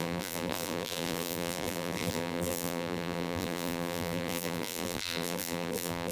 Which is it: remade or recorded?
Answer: remade